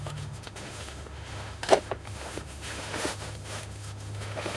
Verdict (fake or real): fake